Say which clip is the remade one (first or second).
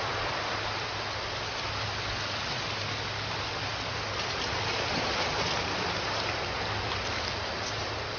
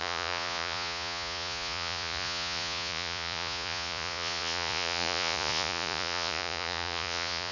second